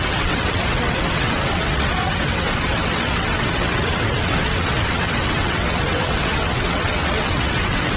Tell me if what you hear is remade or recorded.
remade